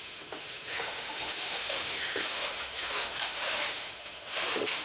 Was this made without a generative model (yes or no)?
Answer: no